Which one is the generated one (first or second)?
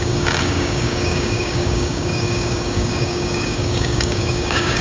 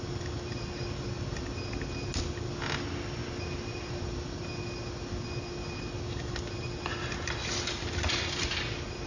first